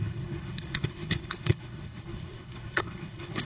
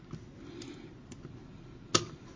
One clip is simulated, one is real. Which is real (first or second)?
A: second